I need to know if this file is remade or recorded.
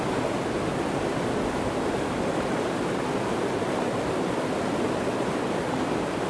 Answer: recorded